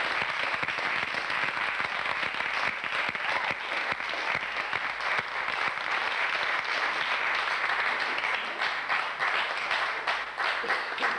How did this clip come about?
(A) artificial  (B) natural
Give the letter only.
B